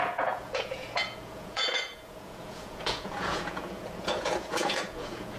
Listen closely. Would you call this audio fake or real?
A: fake